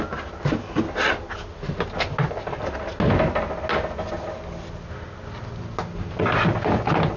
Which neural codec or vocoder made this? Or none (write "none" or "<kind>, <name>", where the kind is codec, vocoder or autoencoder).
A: none